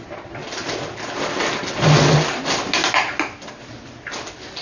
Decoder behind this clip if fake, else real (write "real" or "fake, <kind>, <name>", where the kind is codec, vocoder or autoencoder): real